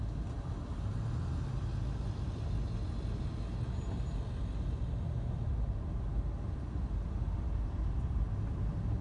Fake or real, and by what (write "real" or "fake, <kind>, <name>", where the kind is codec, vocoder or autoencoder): real